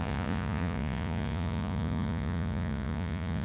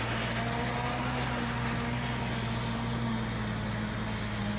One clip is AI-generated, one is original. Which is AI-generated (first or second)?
first